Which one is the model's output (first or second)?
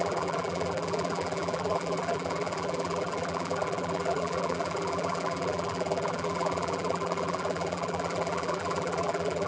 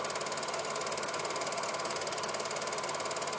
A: first